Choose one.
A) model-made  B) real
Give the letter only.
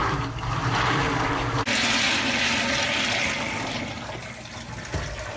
B